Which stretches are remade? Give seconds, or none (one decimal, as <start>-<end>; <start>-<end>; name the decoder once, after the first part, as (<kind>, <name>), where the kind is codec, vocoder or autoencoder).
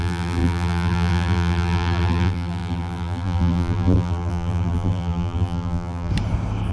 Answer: 0.0-6.1 (vocoder, BigVGAN v2)